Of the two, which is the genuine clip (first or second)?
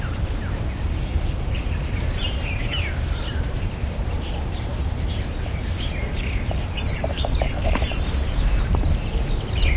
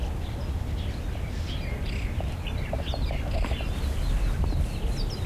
second